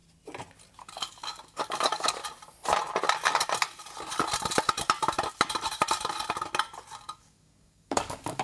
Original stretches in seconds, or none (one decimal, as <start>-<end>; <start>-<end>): 0.0-0.8; 2.2-7.0